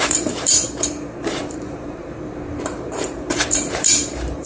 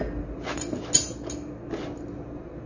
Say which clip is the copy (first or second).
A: first